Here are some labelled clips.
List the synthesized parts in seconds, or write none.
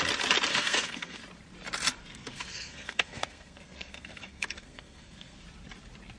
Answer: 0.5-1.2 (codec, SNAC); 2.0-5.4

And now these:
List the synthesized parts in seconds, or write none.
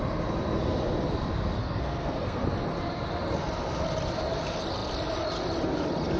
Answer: 1.6-2.4 (codec, SNAC)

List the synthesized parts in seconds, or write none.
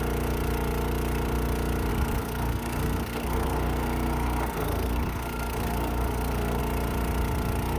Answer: 1.9-6.6 (codec, SNAC)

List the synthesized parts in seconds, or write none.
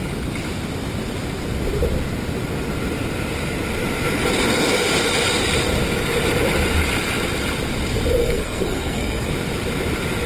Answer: 8.2-9.3 (codec, SNAC)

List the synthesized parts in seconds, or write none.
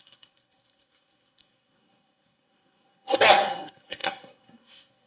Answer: 0.0-5.1 (codec, SNAC)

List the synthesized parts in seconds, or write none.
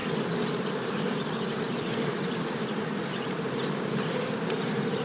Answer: none